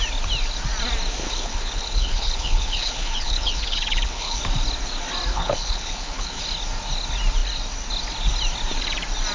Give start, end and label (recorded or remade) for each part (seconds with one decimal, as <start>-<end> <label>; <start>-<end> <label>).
0.0-1.2 recorded; 1.2-4.4 remade; 4.4-5.3 recorded; 5.3-6.4 remade; 6.4-9.3 recorded